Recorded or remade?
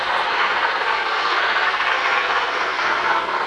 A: remade